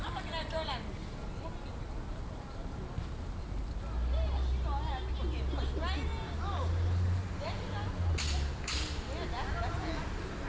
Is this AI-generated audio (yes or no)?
no